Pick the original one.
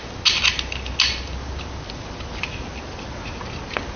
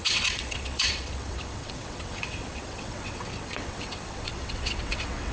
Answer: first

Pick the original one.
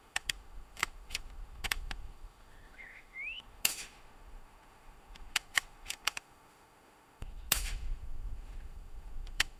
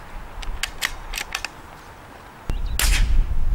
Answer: second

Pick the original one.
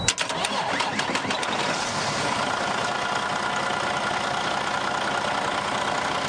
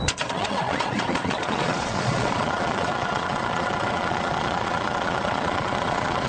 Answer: first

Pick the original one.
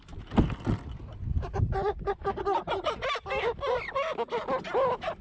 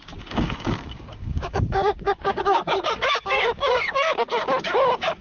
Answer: first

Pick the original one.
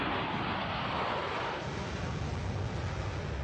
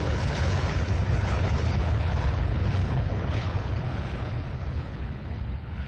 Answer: first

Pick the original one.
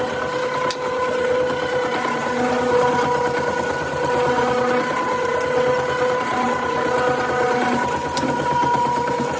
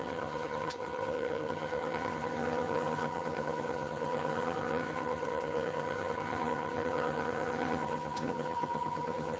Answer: first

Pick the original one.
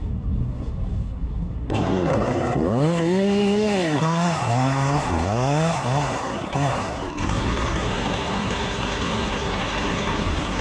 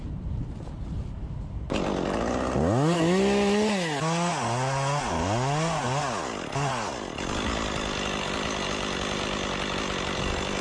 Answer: second